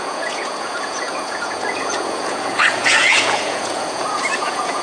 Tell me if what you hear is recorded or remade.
remade